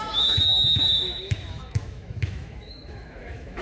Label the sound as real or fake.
fake